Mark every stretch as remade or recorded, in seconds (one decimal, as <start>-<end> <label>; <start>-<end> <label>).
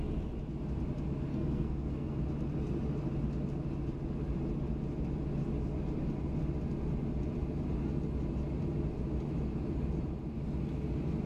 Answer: 0.0-1.3 recorded; 1.3-2.2 remade; 2.2-11.3 recorded